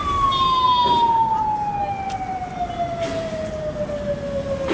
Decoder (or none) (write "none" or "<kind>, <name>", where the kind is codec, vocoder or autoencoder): none